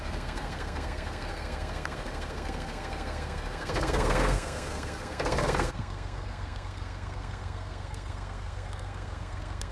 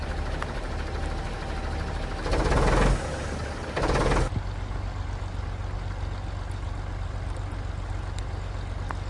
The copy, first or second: first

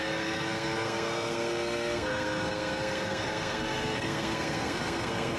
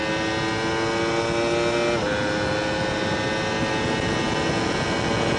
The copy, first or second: first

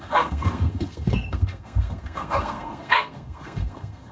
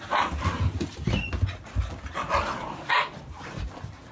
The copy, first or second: first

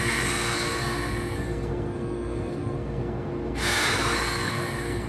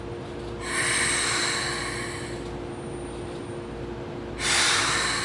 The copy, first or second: first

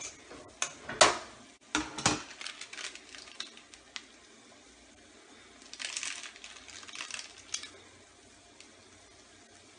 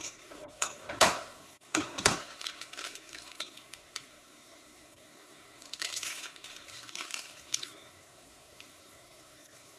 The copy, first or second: second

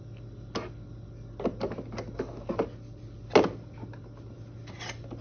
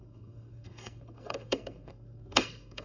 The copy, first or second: second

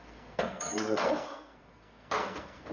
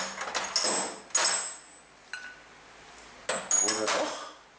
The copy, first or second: first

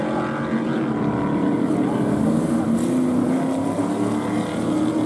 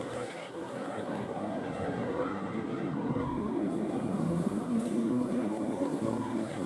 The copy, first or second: second